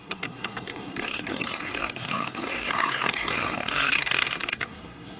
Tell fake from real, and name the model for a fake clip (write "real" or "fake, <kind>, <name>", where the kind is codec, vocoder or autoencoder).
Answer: fake, codec, SNAC